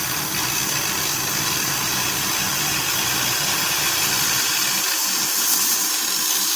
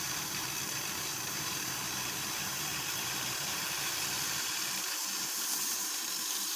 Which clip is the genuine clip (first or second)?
first